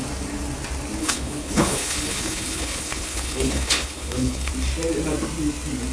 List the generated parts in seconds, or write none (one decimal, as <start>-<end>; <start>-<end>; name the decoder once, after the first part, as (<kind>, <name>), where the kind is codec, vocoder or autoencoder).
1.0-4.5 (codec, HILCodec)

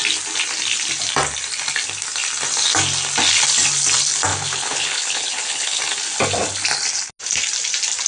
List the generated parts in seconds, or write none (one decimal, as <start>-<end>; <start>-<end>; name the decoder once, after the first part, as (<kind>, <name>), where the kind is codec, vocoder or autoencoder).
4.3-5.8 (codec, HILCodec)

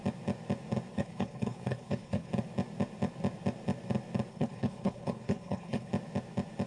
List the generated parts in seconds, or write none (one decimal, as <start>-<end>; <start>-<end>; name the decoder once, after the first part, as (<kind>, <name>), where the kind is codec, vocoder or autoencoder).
0.9-2.3 (codec, HILCodec); 4.3-5.9

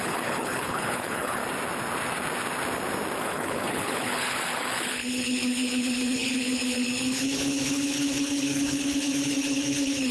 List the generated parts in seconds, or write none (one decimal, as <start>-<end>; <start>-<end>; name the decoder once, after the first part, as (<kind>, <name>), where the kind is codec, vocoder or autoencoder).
0.0-1.4 (codec, HILCodec); 3.2-10.1

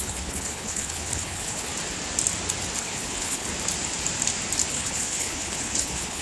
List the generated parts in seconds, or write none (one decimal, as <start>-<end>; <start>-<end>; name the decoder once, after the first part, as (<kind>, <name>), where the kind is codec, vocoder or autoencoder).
0.0-1.7 (codec, HILCodec); 2.8-3.5; 4.7-6.2

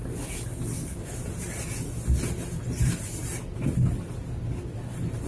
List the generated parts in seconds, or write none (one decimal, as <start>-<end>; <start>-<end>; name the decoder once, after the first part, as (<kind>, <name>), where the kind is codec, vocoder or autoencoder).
none

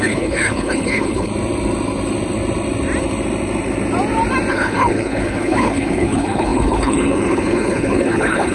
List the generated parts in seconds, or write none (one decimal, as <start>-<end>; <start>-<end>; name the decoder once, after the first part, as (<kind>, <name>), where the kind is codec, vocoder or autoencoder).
0.0-1.3 (codec, HILCodec); 4.5-8.5